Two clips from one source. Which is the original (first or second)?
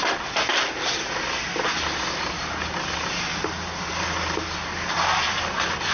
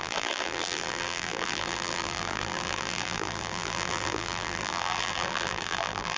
first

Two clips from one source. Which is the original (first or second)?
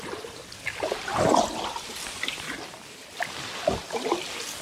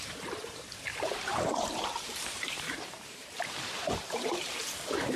first